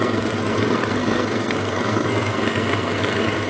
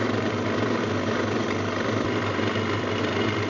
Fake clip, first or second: first